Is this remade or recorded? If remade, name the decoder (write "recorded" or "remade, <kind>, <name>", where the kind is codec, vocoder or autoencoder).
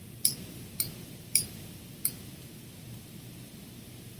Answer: remade, vocoder, BigVGAN v2